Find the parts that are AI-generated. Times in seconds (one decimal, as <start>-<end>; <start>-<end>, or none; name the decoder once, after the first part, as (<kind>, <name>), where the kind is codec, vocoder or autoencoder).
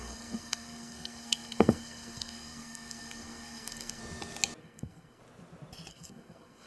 0.0-4.0 (codec, SNAC); 4.6-5.2; 5.9-6.7